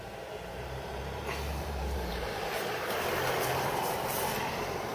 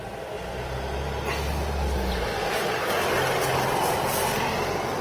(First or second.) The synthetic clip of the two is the first